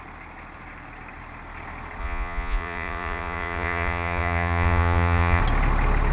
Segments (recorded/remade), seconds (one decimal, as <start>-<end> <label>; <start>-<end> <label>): 0.0-2.0 recorded; 2.0-5.4 remade; 5.4-6.1 recorded